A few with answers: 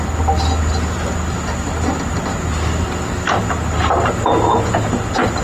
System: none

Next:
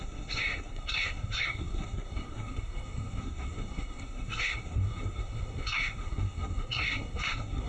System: codec, SNAC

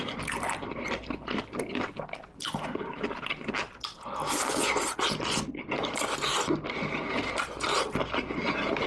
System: none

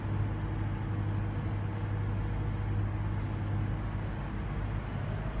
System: none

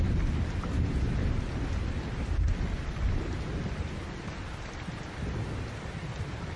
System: none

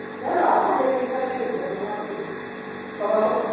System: none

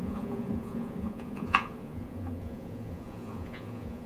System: vocoder, Vocos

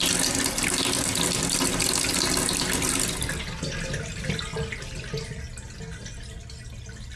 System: none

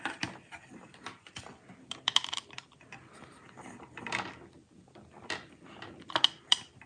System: none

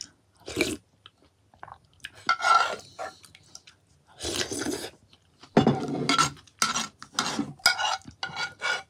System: none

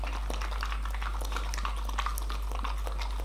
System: none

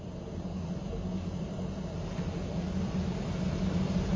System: none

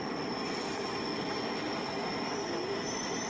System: none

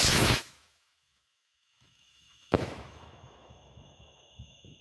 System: autoencoder, DAC-VAE